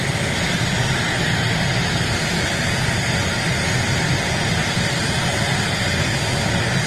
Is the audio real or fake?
real